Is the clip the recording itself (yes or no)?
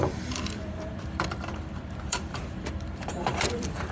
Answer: no